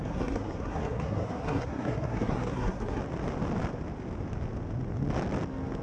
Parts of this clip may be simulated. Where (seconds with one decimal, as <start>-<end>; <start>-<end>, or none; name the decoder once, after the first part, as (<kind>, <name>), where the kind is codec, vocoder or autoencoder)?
0.0-3.0 (codec, SNAC)